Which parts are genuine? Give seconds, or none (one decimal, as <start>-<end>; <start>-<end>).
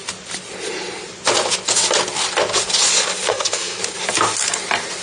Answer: 0.0-3.3; 3.8-5.0